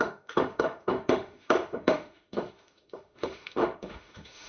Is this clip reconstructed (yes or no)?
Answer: yes